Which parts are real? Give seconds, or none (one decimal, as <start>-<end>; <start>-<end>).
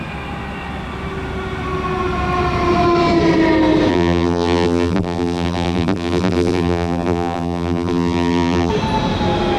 0.0-3.9; 8.7-9.6